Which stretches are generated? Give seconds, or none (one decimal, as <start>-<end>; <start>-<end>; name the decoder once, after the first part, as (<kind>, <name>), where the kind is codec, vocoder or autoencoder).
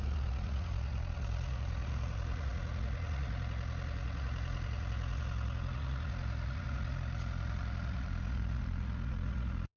0.0-9.8 (vocoder, Vocos)